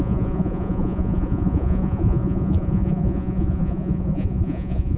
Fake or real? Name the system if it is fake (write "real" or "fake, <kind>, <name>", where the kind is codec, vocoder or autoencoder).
fake, vocoder, Vocos